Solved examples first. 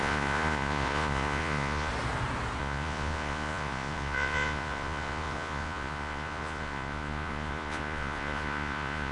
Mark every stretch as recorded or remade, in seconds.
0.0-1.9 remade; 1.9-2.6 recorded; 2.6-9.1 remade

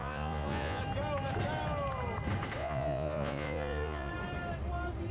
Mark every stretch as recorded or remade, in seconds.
0.0-0.8 remade; 0.8-2.6 recorded; 2.6-4.1 remade; 4.1-5.1 recorded

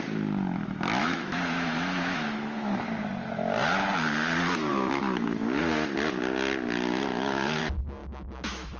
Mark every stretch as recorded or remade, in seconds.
0.0-1.0 recorded; 1.0-2.7 remade; 2.7-4.7 recorded; 4.7-5.6 remade; 5.6-7.1 recorded; 7.1-7.6 remade; 7.6-8.0 recorded; 8.0-8.8 remade

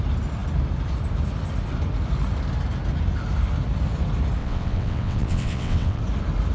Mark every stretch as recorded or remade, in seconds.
0.0-4.4 recorded; 4.4-6.0 remade; 6.0-6.5 recorded

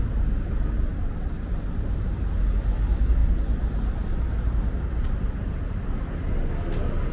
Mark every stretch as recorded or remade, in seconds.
0.0-7.1 recorded

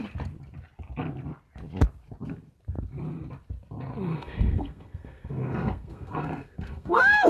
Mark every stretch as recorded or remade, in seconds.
0.0-4.1 recorded; 4.1-7.3 remade

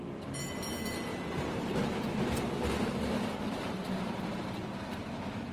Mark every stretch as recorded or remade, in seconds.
0.0-1.1 recorded; 1.1-4.4 remade; 4.4-5.5 recorded